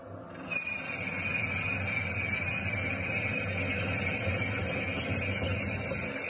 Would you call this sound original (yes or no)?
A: yes